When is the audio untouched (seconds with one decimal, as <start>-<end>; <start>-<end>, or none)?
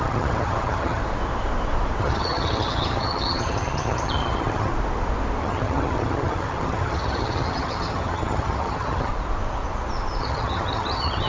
1.0-2.0; 4.7-5.4; 9.1-10.2